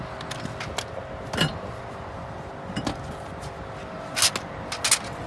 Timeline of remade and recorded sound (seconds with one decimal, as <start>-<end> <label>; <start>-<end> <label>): 0.0-5.3 recorded